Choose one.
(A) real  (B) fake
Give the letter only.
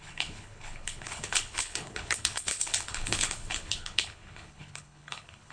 B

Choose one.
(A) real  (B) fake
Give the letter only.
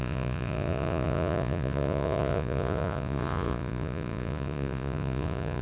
B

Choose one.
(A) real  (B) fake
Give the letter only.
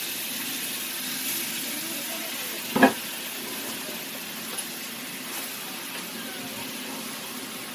A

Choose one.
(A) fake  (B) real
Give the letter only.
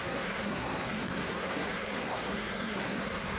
A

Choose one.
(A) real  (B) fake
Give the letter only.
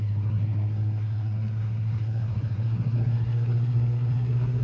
B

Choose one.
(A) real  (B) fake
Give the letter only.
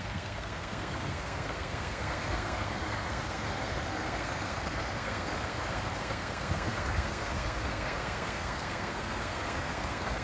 B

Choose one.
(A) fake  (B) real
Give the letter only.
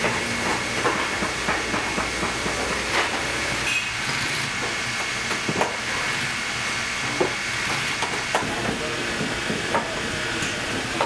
B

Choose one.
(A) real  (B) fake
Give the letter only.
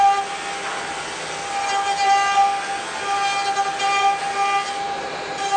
A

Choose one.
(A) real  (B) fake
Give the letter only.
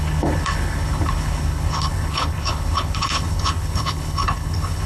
B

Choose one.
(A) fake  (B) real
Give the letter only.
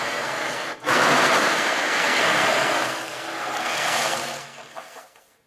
A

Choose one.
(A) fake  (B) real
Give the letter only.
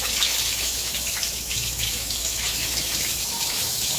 A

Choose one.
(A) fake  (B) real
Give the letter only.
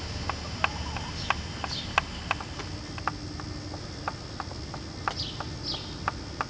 B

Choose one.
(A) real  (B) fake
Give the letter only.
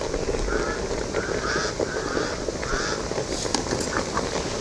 A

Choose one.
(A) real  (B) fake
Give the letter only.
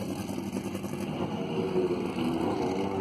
A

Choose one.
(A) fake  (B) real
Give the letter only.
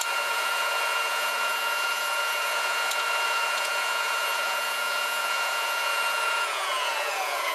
A